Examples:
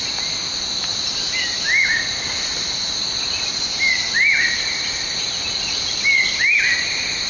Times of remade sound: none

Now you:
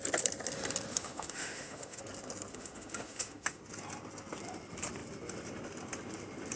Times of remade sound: 0.9-2.0 (autoencoder, DAC-VAE); 2.5-3.6